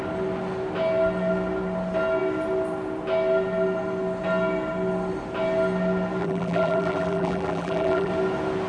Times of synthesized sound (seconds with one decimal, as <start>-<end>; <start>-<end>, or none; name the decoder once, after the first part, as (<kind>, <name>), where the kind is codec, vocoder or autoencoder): 6.2-8.1 (vocoder, BigVGAN v2)